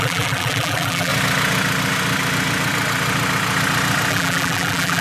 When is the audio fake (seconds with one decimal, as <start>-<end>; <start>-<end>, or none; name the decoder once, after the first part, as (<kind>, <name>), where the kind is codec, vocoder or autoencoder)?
0.0-1.1 (vocoder, BigVGAN v2); 4.1-5.0